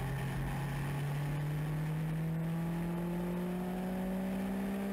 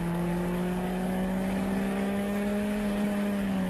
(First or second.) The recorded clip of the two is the first